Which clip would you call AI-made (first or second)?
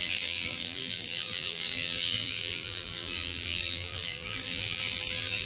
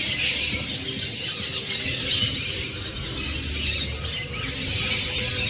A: first